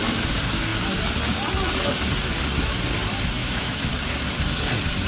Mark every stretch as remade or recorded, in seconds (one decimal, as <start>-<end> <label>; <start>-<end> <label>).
0.0-3.4 recorded; 3.4-3.9 remade; 3.9-5.1 recorded